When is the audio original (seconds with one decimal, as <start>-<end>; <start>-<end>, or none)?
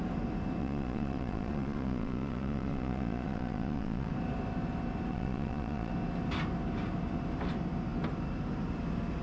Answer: 0.0-0.6; 4.1-5.1; 5.9-9.2